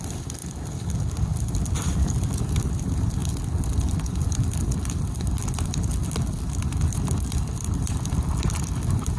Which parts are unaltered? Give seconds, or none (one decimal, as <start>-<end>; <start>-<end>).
0.4-2.4